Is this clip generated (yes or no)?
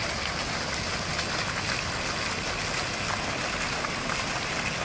no